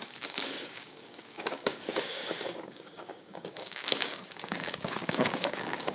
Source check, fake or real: fake